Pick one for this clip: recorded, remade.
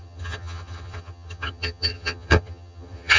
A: remade